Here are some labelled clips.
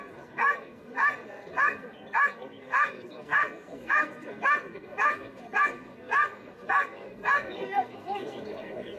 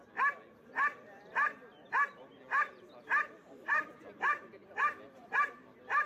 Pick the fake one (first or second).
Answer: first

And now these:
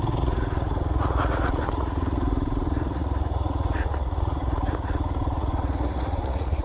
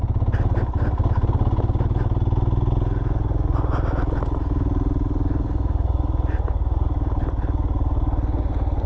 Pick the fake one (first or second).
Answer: first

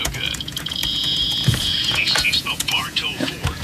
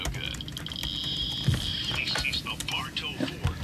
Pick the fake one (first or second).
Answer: first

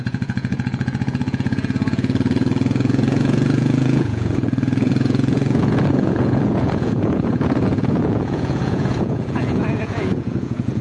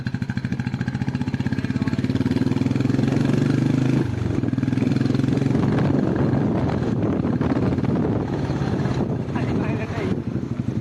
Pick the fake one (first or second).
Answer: first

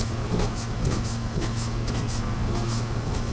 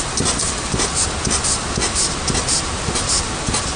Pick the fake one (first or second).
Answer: first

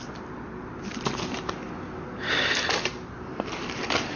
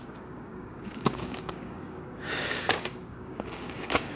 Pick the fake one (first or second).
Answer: second